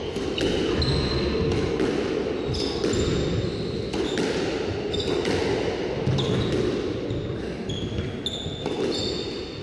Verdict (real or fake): real